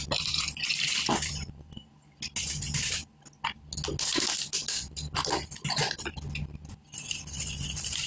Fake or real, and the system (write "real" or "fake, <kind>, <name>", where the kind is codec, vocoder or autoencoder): real